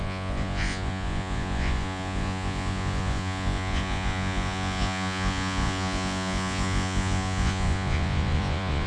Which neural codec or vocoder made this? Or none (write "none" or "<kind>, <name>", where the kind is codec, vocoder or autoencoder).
vocoder, Vocos